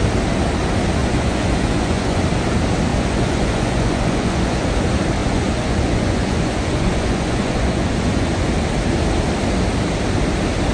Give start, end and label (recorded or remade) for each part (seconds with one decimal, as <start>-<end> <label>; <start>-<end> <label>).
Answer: 0.0-1.0 recorded; 1.0-2.2 remade; 2.2-2.9 recorded; 2.9-4.7 remade; 4.7-5.2 recorded; 5.2-8.5 remade; 8.5-10.7 recorded